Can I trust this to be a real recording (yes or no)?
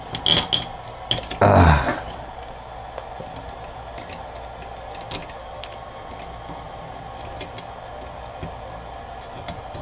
yes